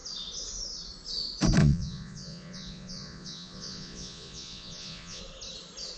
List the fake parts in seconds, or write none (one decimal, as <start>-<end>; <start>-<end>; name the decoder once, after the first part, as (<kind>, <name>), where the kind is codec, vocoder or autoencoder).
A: 1.6-5.2 (vocoder, Vocos)